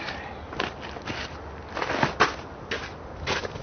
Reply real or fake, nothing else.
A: real